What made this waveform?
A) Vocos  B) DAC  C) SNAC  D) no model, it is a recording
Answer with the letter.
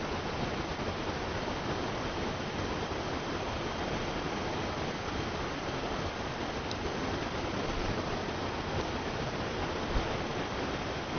D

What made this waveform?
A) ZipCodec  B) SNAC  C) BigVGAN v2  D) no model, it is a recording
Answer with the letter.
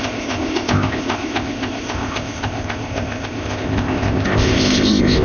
A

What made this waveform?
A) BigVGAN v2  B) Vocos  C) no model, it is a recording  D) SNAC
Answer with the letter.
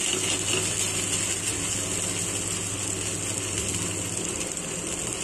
C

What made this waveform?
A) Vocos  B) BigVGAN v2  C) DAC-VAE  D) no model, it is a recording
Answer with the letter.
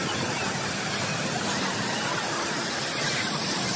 D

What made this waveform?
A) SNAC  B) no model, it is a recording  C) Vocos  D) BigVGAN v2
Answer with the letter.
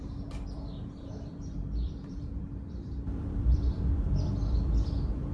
D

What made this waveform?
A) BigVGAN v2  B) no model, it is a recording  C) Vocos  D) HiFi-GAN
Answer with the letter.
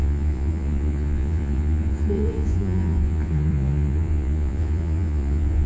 C